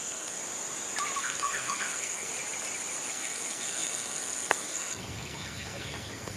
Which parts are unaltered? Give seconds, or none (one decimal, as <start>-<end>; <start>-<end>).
0.4-1.2; 2.3-3.1

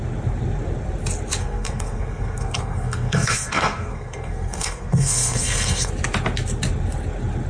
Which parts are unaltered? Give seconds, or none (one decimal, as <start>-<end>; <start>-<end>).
0.0-1.4; 5.9-7.5

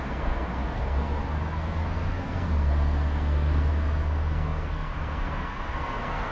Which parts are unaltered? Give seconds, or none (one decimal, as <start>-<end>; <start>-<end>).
none

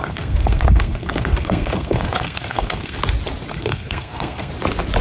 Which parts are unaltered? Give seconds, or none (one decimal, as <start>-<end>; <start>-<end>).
3.0-3.5; 4.5-5.0

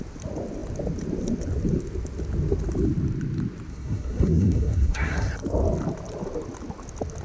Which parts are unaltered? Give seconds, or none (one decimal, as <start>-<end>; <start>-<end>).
0.0-3.7; 5.3-7.2

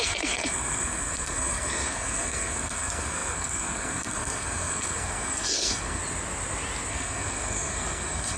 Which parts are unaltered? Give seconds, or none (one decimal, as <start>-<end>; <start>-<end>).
6.0-6.9

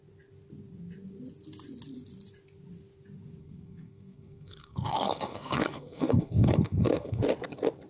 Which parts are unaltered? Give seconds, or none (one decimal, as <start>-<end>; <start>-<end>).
0.0-3.4; 7.2-7.9

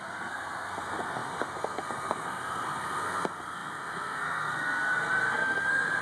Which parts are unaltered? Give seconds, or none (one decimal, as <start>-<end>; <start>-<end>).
none